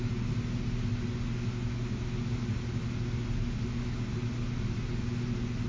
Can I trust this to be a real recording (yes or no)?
yes